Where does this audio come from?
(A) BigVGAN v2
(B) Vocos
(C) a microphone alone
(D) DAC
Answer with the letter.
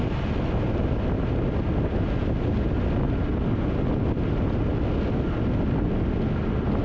C